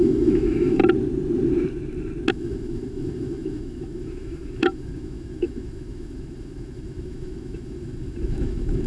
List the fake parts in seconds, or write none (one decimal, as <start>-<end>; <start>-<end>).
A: 0.0-0.8; 2.3-8.9